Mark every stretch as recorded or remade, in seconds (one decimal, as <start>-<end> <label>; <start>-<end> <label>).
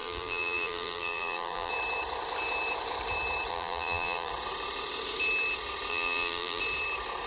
0.0-1.7 remade; 1.7-3.5 recorded; 3.5-4.3 remade; 4.3-5.9 recorded; 5.9-6.6 remade; 6.6-7.3 recorded